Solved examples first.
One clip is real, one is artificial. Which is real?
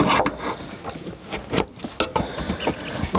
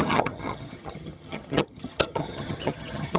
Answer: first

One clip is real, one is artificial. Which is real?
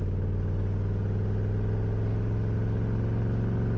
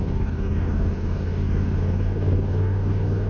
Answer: first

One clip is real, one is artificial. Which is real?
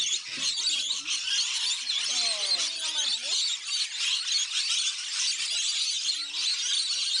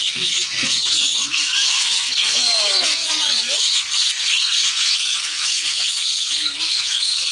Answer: first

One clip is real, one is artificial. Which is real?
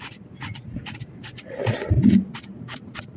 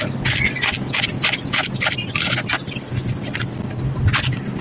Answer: second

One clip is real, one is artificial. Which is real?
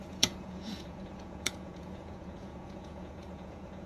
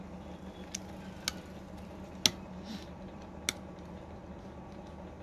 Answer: second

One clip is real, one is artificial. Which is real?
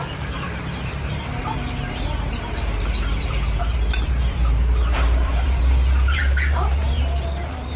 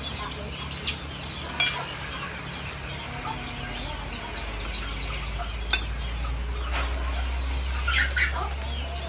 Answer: second